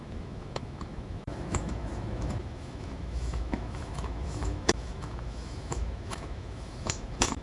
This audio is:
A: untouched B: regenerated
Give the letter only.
B